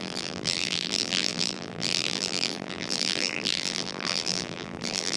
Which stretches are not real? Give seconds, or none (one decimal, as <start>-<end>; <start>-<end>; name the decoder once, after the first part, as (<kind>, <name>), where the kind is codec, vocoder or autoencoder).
0.0-5.2 (vocoder, BigVGAN v2)